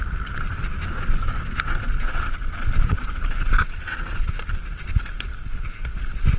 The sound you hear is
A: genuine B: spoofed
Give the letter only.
A